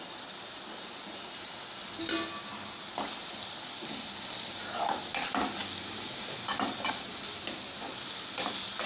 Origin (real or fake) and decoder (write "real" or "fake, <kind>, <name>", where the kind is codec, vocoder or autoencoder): real